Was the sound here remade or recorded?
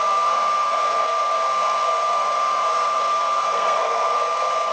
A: remade